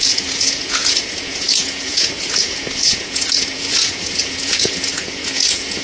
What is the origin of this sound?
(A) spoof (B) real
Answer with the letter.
A